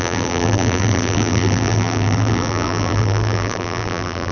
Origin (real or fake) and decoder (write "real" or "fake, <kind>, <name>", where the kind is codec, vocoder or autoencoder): fake, vocoder, BigVGAN v2